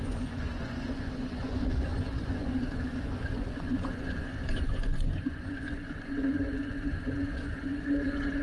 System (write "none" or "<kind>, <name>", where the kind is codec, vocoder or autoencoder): vocoder, Vocos